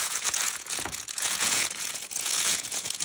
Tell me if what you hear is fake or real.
fake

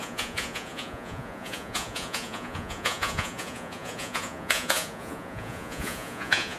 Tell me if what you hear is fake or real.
fake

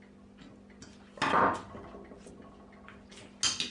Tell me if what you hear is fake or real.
real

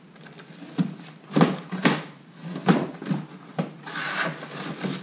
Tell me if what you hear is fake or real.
real